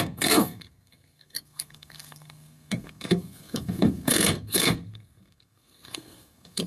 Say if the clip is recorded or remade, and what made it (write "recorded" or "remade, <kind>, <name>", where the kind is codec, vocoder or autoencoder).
remade, codec, SNAC